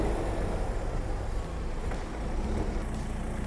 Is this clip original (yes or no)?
yes